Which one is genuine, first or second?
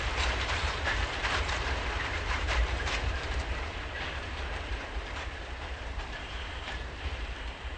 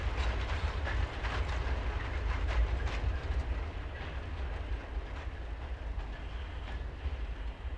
second